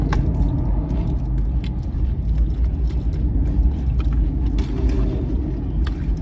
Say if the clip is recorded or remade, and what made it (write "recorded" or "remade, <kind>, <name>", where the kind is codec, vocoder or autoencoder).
recorded